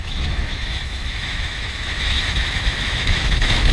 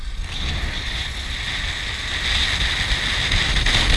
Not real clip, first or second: first